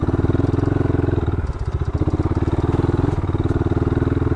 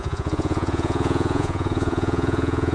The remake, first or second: second